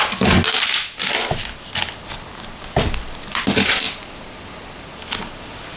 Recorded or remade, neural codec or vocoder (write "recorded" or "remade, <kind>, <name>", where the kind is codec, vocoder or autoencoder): recorded